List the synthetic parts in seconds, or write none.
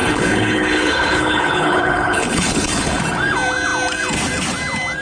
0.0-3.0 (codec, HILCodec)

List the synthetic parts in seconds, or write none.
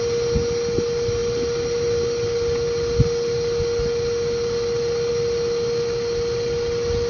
none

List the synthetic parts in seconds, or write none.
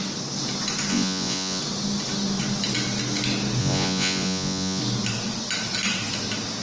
0.9-1.6 (vocoder, Vocos); 3.6-4.8